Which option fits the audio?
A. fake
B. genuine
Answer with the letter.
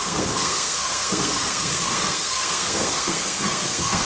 A